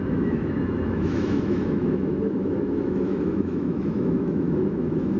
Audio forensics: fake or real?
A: fake